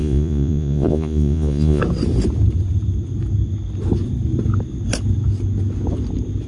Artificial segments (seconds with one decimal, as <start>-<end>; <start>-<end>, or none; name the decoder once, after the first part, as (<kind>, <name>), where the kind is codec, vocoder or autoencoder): 0.0-1.8 (vocoder, Vocos)